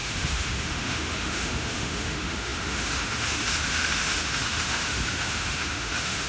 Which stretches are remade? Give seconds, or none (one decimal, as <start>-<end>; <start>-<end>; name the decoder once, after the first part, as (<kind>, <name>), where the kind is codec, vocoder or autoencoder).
0.0-6.3 (autoencoder, DAC-VAE)